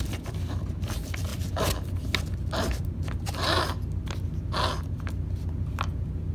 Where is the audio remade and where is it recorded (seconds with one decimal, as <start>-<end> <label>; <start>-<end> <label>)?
0.0-6.3 recorded

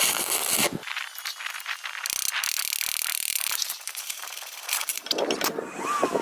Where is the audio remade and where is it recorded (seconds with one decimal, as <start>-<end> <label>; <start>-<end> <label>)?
0.0-3.3 recorded; 3.3-5.4 remade; 5.4-6.2 recorded

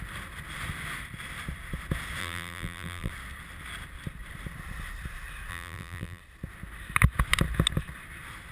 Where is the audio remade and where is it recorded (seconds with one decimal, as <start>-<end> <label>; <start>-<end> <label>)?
0.0-2.2 recorded; 2.2-3.1 remade; 3.1-5.5 recorded; 5.5-6.2 remade; 6.2-8.5 recorded

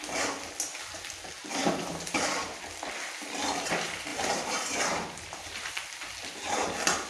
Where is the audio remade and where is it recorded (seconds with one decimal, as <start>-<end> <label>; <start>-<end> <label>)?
0.0-1.6 recorded; 1.6-2.3 remade; 2.3-4.1 recorded; 4.1-5.7 remade; 5.7-7.1 recorded

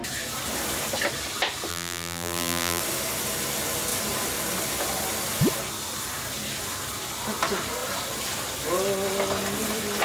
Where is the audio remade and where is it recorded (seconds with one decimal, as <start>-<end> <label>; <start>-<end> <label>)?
0.0-1.7 recorded; 1.7-2.8 remade; 2.8-10.0 recorded

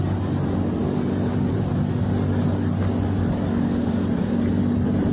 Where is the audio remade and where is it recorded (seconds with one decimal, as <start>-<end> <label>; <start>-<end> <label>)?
0.0-5.1 recorded

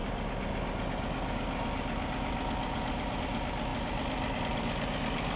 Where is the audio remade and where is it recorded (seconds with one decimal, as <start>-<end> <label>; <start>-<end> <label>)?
0.0-5.4 recorded